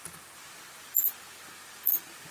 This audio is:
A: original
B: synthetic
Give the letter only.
A